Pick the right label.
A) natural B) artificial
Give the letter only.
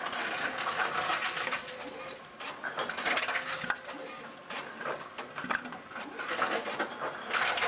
A